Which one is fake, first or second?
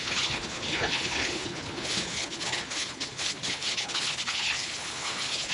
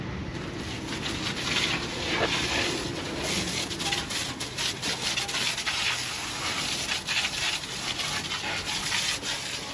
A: first